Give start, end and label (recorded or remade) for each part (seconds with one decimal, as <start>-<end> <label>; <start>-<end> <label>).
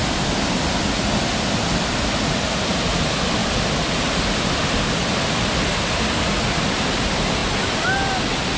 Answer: 0.0-8.6 recorded